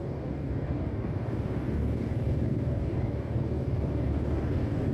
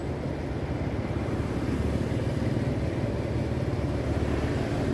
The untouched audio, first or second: second